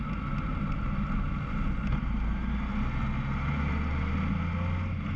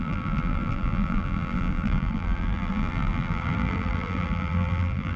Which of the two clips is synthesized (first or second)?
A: second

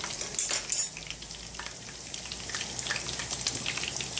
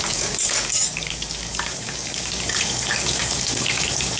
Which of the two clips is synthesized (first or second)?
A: second